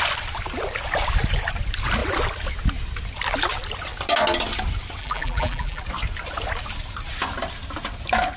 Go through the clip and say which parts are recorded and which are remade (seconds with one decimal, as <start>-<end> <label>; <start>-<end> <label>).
0.0-5.0 recorded; 5.0-5.8 remade; 5.8-8.4 recorded